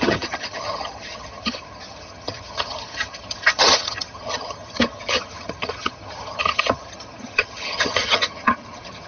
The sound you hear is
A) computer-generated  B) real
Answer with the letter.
A